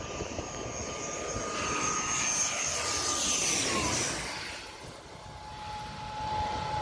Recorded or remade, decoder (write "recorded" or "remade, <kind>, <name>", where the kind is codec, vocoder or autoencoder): recorded